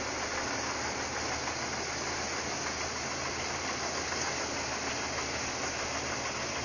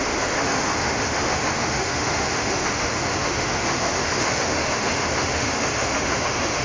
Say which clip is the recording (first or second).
first